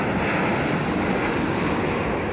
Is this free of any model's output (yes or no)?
yes